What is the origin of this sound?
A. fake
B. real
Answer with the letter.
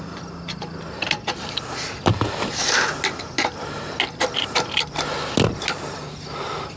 B